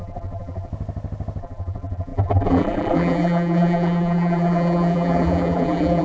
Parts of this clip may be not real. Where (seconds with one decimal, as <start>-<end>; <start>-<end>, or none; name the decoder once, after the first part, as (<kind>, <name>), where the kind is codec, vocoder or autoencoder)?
0.0-0.7 (vocoder, BigVGAN v2); 1.4-6.0